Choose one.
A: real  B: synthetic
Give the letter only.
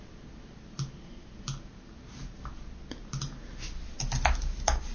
A